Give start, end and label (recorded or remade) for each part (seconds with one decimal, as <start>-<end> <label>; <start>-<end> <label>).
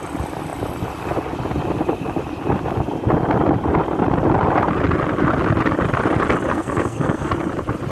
0.0-6.5 recorded; 6.5-7.3 remade; 7.3-7.9 recorded